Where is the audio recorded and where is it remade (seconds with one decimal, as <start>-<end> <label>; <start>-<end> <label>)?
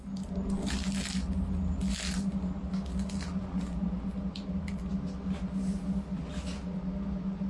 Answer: 0.0-3.4 recorded; 3.4-4.1 remade; 4.1-7.5 recorded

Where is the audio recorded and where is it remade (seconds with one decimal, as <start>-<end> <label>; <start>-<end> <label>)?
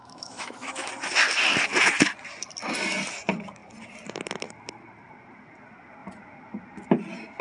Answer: 0.0-0.9 remade; 0.9-7.4 recorded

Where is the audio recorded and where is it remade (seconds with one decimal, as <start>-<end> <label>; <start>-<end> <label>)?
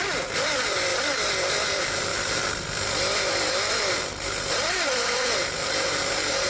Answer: 0.0-6.5 remade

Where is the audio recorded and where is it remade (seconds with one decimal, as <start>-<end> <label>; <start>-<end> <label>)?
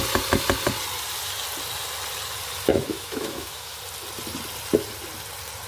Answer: 0.0-2.7 recorded; 2.7-3.8 remade; 3.8-5.7 recorded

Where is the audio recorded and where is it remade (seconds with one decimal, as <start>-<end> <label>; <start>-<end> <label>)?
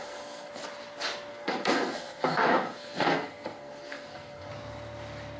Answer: 0.0-0.5 remade; 0.5-1.3 recorded; 1.3-4.5 remade; 4.5-5.4 recorded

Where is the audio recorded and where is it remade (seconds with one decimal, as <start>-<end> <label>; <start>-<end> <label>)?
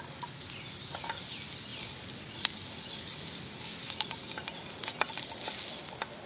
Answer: 0.0-6.3 recorded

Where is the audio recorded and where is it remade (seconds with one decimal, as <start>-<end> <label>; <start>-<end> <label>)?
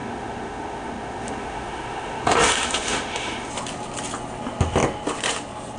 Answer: 0.0-3.5 remade; 3.5-5.8 recorded